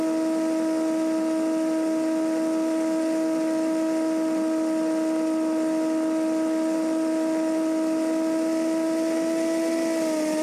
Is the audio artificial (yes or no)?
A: no